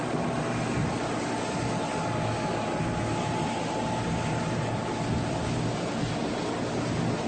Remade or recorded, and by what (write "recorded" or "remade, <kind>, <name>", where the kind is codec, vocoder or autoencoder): recorded